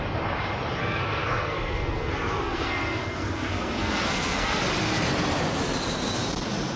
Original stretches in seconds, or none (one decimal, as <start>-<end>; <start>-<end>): 0.0-0.8; 4.6-6.8